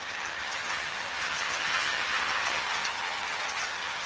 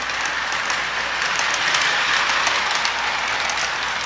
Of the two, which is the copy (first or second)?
first